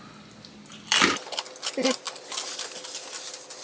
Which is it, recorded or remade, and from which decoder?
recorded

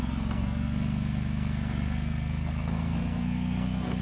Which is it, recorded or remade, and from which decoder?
remade, codec, SNAC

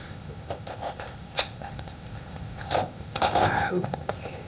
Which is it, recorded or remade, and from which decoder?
remade, codec, ZipCodec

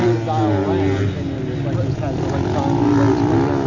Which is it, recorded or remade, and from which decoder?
recorded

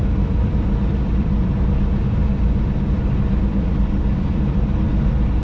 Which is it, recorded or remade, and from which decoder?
remade, vocoder, BigVGAN v2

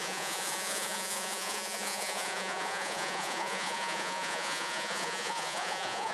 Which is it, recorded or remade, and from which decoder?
remade, vocoder, Vocos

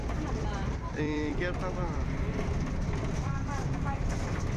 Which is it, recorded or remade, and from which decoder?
remade, vocoder, BigVGAN v2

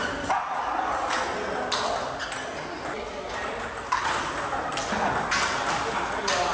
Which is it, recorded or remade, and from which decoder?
recorded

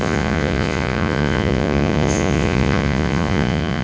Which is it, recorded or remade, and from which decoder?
remade, vocoder, Vocos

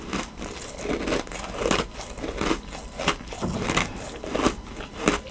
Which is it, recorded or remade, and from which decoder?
recorded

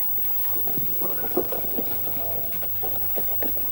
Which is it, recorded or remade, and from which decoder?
recorded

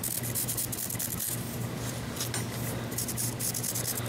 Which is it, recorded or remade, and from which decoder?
recorded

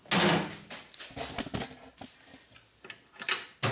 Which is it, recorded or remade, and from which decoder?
recorded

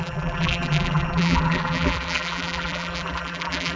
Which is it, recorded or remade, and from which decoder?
remade, vocoder, BigVGAN v2